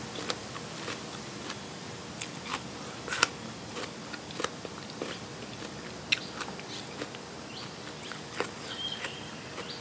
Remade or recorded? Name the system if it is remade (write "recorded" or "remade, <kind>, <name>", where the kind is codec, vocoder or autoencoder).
recorded